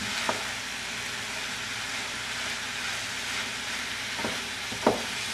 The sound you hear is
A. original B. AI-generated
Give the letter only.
A